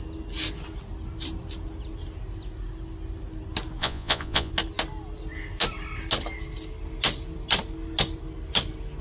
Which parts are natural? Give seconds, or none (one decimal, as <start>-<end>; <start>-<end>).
0.0-3.8; 4.5-9.0